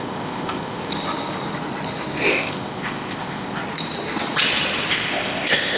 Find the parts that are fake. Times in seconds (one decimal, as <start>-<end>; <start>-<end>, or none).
0.0-0.9; 2.3-3.6; 4.9-5.8